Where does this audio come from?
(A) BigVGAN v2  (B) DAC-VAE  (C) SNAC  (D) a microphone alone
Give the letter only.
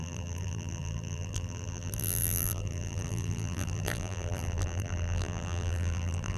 A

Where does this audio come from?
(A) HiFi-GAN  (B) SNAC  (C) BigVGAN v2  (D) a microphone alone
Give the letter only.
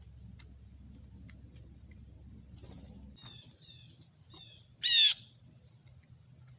D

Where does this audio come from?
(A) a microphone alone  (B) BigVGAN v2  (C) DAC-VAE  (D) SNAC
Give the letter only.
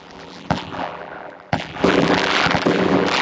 B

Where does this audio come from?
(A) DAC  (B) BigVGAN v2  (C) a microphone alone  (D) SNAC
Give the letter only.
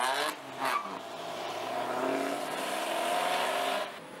C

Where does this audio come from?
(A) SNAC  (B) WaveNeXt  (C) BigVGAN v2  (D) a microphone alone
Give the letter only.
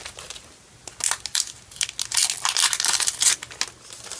D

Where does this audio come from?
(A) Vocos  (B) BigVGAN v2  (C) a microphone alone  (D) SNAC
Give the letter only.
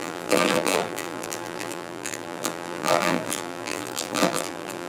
B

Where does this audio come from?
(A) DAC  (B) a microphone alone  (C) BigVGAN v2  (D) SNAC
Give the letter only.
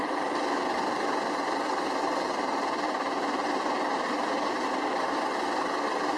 B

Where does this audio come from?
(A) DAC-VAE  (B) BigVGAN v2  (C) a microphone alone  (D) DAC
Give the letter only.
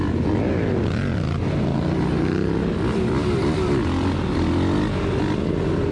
C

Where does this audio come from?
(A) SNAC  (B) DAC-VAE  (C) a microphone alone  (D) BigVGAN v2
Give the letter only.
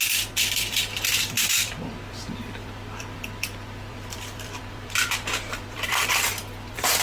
D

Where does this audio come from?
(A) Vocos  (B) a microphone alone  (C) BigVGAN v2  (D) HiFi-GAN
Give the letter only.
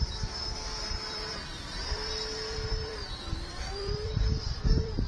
C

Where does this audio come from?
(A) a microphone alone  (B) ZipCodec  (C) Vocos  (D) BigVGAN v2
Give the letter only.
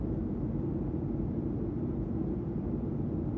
A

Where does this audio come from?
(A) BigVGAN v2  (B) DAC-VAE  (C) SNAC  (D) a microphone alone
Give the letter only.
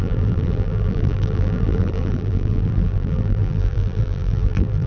A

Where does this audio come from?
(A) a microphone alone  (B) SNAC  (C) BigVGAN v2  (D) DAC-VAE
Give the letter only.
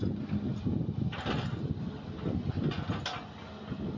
A